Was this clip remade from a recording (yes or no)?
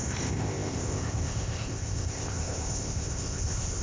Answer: yes